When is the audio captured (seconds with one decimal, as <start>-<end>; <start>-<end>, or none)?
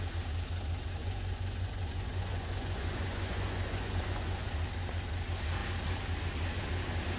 0.0-1.0; 4.5-7.2